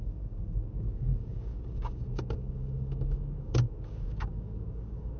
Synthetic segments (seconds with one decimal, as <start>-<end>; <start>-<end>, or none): 0.0-5.2